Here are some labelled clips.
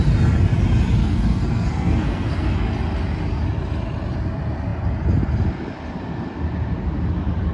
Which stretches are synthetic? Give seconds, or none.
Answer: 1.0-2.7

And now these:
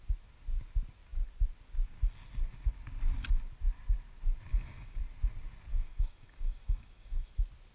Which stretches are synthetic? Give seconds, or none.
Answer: 4.5-5.0; 5.7-7.3